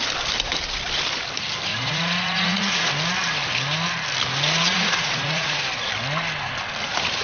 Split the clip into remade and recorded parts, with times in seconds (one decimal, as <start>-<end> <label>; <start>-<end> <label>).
0.0-1.7 recorded; 1.7-2.9 remade; 2.9-4.6 recorded; 4.6-5.6 remade; 5.6-7.2 recorded